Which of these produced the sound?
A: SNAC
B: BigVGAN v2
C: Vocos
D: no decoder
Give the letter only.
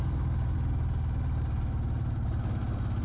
D